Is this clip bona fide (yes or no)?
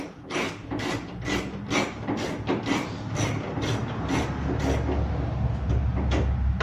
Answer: yes